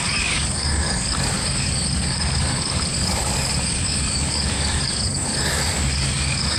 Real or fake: fake